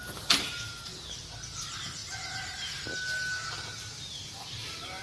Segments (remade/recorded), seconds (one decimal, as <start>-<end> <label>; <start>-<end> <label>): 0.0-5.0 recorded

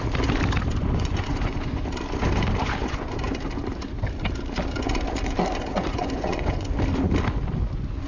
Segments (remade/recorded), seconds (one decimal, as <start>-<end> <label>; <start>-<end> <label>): 0.0-0.8 recorded; 0.8-1.8 remade; 1.8-2.8 recorded; 2.8-3.3 remade; 3.3-5.7 recorded; 5.7-6.7 remade; 6.7-8.1 recorded

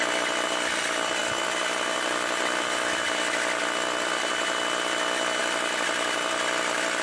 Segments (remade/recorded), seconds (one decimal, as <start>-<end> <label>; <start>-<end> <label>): 0.0-7.0 recorded

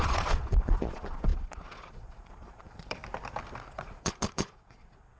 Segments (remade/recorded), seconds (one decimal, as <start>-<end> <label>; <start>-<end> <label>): 0.0-3.0 remade; 3.0-3.7 recorded; 3.7-5.2 remade